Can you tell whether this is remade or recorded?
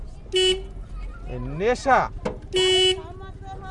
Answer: recorded